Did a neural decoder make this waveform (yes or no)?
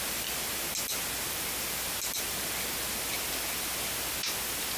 no